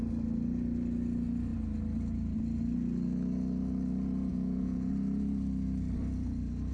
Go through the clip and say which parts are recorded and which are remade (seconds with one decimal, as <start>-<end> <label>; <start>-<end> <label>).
0.0-4.3 recorded; 4.3-4.9 remade; 4.9-6.7 recorded

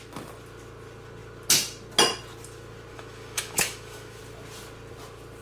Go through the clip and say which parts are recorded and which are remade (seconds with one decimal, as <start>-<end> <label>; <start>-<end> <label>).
0.0-2.9 recorded; 2.9-4.2 remade; 4.2-5.4 recorded

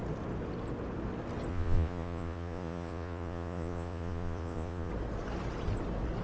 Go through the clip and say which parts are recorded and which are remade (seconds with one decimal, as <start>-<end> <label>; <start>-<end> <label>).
0.0-1.5 recorded; 1.5-4.9 remade; 4.9-6.2 recorded

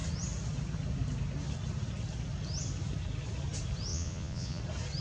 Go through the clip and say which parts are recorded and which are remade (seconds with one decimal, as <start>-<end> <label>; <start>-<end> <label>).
0.0-3.9 recorded; 3.9-4.6 remade; 4.6-5.0 recorded